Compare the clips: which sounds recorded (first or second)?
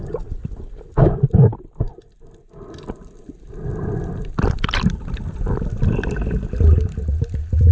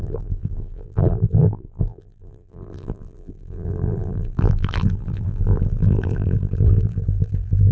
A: first